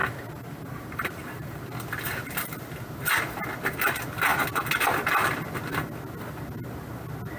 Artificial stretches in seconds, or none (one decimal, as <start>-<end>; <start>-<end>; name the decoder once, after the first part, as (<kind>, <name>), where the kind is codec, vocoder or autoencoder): 0.0-1.6 (vocoder, BigVGAN v2)